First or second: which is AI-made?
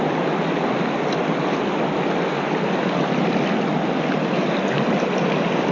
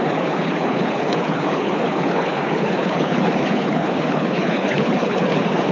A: second